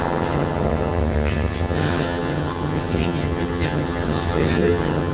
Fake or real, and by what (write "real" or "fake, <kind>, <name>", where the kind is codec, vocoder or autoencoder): fake, vocoder, HiFi-GAN